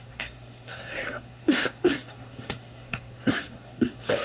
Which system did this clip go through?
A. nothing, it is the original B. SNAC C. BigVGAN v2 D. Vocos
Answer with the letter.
B